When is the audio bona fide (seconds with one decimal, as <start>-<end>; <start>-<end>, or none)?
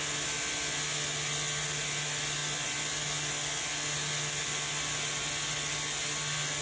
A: 0.0-6.6